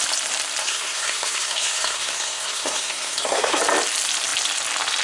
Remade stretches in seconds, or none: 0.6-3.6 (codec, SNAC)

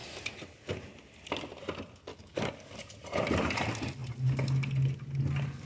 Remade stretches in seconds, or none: 2.1-2.8 (codec, DAC)

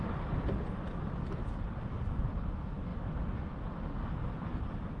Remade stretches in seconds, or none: none

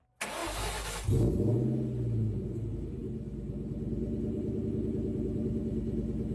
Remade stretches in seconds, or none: none

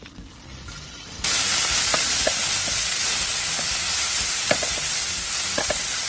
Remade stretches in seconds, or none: none

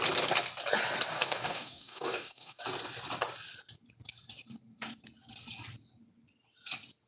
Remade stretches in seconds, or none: 1.1-2.6 (codec, DAC)

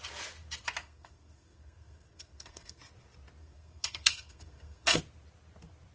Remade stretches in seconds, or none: 0.8-2.8 (codec, SNAC); 3.4-5.0

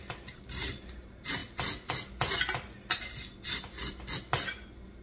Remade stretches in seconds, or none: 0.0-1.4 (vocoder, BigVGAN v2); 4.3-5.0